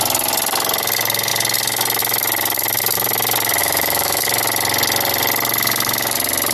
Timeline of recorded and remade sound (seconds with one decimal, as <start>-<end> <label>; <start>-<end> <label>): 0.0-3.6 recorded; 3.6-4.2 remade; 4.2-6.5 recorded